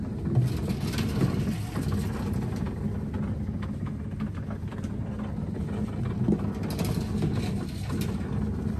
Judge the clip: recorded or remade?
recorded